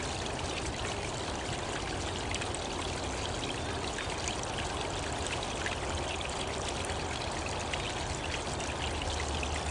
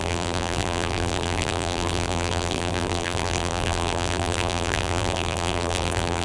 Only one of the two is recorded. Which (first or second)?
first